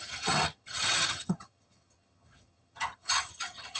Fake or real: fake